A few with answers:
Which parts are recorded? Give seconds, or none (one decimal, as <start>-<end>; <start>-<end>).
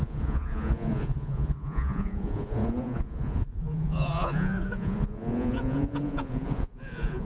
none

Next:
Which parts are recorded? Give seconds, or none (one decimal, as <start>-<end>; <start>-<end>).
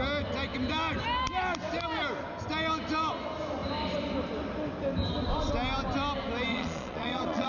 0.0-6.5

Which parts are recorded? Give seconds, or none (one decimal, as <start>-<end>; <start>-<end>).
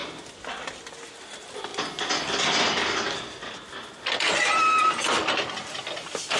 0.0-6.4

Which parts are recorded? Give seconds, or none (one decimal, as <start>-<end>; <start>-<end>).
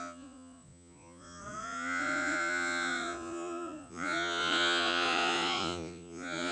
none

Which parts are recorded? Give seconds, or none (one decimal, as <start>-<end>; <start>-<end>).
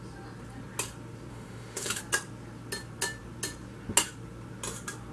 0.0-1.3; 2.0-5.1